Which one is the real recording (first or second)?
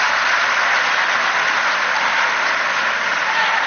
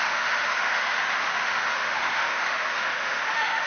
first